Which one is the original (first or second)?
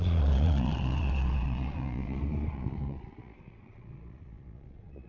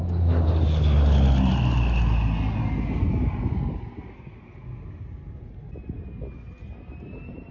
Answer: second